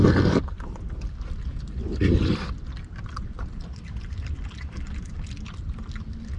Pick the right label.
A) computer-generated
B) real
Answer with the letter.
B